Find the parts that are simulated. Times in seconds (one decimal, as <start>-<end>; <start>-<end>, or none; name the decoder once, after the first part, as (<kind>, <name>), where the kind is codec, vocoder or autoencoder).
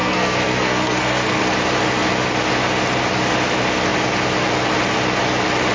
0.0-1.4 (codec, SNAC)